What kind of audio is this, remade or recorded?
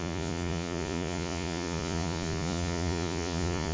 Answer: remade